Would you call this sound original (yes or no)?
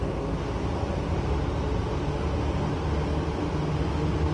yes